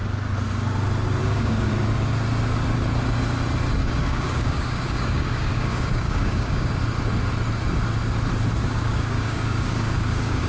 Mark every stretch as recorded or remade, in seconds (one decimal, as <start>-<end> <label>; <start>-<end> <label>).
0.0-1.2 recorded; 1.2-1.7 remade; 1.7-3.8 recorded; 3.8-6.7 remade; 6.7-8.6 recorded; 8.6-10.5 remade